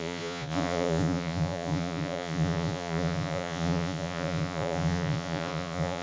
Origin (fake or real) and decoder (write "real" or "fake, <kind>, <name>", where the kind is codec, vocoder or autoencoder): fake, vocoder, Vocos